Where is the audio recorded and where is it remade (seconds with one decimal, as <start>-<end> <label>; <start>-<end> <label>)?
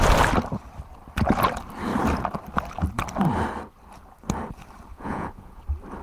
0.0-4.9 recorded; 4.9-5.6 remade; 5.6-6.0 recorded